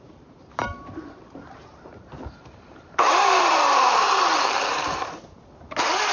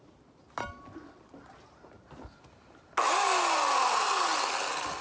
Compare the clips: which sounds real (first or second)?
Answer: second